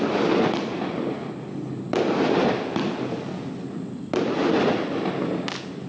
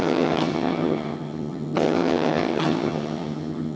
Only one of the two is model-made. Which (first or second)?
second